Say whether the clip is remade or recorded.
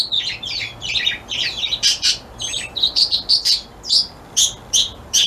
remade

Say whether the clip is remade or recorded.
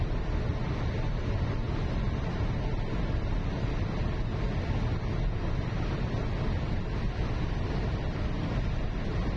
recorded